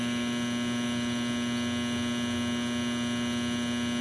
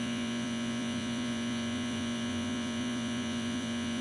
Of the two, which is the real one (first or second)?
first